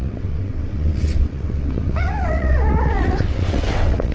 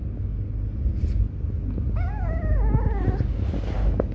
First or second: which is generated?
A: first